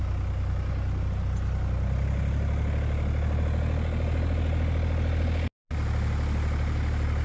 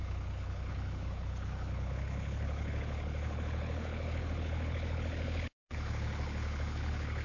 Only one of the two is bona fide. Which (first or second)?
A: first